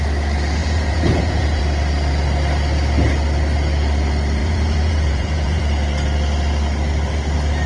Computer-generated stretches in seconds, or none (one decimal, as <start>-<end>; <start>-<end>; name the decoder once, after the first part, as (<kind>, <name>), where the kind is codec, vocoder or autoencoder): 0.6-1.6 (vocoder, Vocos); 4.4-5.6